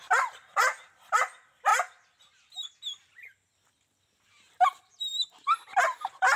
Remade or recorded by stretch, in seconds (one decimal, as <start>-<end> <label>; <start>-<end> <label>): 0.0-6.4 recorded